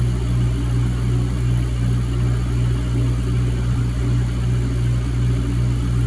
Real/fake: real